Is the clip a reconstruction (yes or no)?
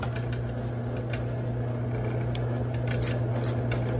no